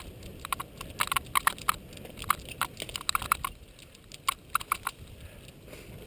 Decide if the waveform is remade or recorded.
recorded